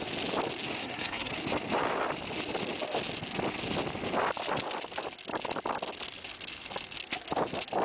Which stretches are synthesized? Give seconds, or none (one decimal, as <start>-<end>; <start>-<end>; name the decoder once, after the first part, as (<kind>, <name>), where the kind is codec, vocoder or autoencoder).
0.8-1.3 (codec, SNAC)